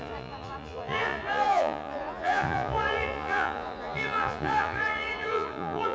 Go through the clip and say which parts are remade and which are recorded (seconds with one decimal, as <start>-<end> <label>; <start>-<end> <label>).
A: 0.0-5.9 remade